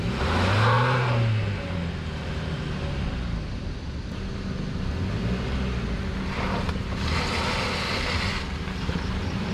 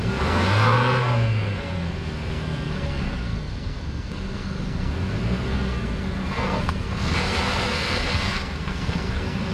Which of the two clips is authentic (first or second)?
first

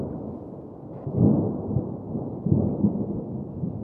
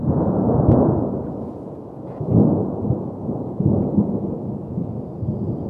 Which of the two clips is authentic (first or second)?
first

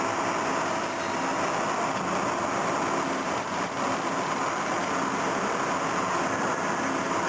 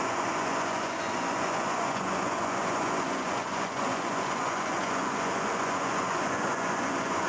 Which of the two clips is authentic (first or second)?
first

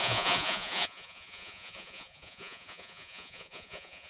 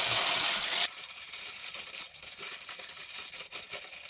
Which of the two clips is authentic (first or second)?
second